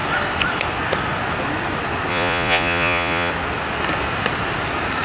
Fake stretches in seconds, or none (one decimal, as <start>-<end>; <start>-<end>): 2.1-3.3